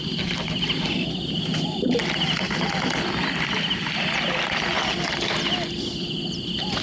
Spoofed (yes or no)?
no